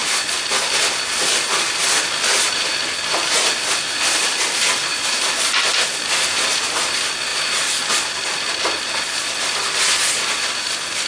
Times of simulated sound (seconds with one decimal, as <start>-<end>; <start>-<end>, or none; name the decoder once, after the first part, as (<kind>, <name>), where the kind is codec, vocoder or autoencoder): none